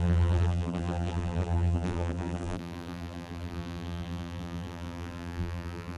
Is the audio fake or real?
fake